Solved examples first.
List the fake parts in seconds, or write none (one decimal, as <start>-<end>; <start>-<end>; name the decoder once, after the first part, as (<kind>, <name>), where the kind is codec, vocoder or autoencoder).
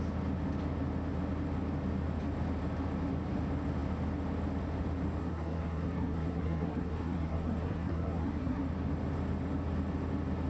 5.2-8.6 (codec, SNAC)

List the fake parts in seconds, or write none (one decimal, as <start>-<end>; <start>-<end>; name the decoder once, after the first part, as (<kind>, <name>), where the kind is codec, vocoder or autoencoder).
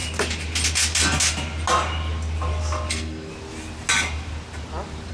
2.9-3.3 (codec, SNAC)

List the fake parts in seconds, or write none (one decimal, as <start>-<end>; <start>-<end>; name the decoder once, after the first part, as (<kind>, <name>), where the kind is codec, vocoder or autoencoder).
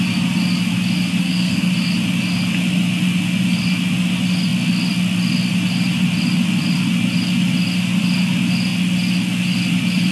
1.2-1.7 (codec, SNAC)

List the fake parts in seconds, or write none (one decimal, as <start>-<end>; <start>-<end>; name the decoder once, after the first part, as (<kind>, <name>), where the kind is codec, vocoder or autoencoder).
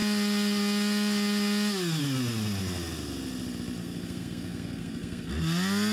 3.8-5.3 (codec, SNAC)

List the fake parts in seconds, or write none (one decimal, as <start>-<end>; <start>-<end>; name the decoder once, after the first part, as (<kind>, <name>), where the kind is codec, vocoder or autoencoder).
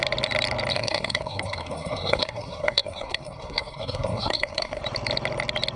0.7-4.8 (codec, SNAC)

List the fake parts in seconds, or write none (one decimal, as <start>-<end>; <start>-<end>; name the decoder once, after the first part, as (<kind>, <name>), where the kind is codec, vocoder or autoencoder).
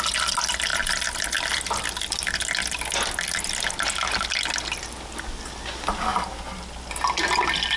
none